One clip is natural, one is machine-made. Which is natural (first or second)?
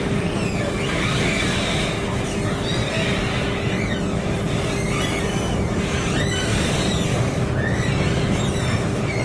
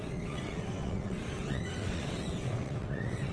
first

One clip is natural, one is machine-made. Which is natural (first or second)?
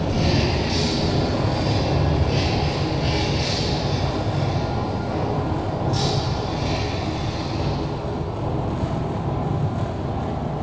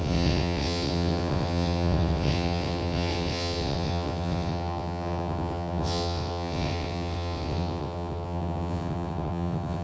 first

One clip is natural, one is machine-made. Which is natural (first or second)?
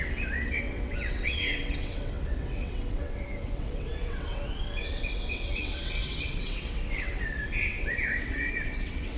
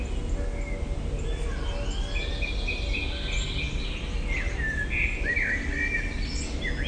second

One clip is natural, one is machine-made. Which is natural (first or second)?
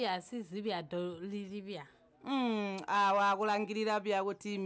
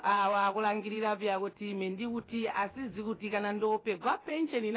first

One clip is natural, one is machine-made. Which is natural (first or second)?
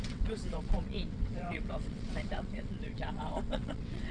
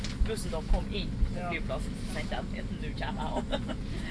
second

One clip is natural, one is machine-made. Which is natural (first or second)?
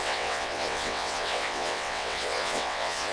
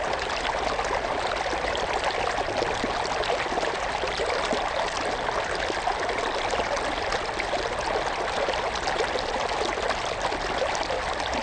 second